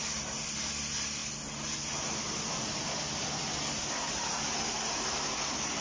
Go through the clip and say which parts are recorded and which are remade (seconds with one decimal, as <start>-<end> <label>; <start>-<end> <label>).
0.0-5.8 recorded